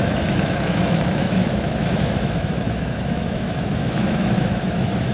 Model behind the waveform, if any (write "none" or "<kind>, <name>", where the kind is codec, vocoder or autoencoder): autoencoder, DAC-VAE